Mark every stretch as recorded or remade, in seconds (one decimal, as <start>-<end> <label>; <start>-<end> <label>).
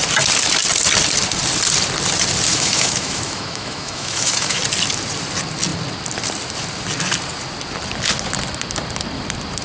0.0-2.5 recorded; 2.5-4.6 remade; 4.6-9.6 recorded